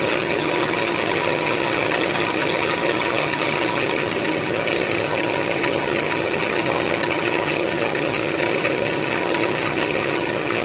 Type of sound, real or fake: fake